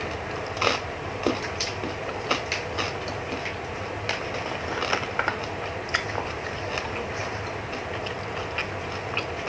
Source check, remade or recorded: recorded